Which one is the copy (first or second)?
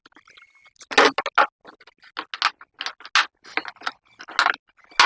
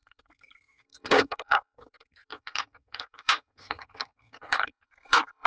second